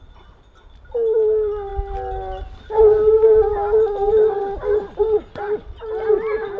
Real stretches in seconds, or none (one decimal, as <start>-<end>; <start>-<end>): 0.0-6.6